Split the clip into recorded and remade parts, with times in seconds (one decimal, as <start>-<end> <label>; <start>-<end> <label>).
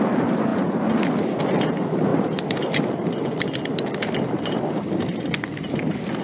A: 0.0-2.1 recorded; 2.1-5.8 remade; 5.8-6.2 recorded